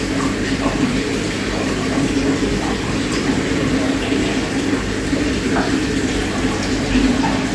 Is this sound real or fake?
real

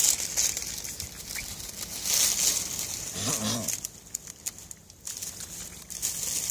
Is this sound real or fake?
real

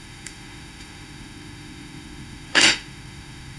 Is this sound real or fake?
fake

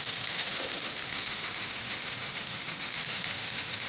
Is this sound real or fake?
fake